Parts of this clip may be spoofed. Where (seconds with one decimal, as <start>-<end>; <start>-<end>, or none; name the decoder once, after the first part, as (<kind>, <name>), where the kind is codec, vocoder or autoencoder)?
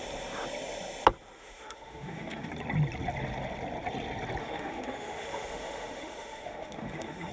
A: 1.4-2.5 (autoencoder, DAC-VAE); 4.4-7.3